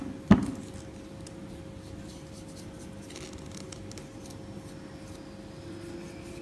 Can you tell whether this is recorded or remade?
recorded